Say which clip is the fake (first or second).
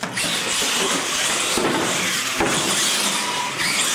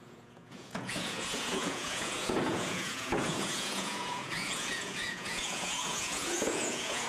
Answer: second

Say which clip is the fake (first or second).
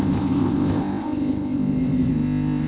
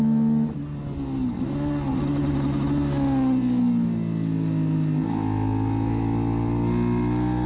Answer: first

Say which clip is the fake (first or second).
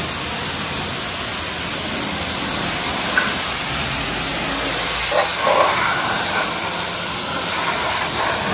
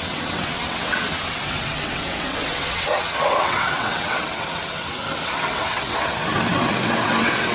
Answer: second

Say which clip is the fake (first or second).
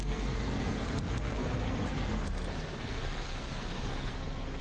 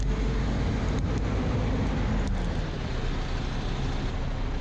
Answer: first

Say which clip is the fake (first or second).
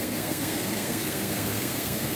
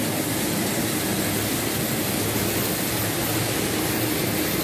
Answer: first